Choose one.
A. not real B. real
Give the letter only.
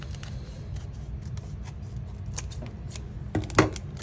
B